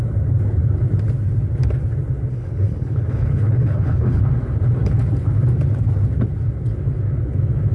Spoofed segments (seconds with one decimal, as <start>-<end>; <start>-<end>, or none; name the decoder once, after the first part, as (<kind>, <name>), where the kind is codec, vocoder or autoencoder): 2.3-4.2 (codec, HILCodec)